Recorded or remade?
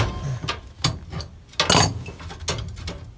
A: recorded